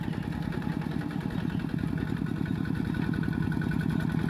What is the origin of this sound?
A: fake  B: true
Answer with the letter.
B